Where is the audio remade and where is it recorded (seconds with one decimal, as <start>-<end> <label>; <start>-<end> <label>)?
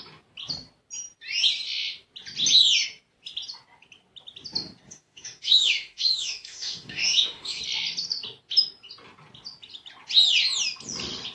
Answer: 0.0-4.9 recorded; 4.9-7.6 remade; 7.6-11.3 recorded